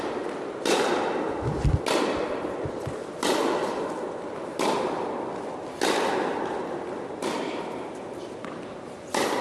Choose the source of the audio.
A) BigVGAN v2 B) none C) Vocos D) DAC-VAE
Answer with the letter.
B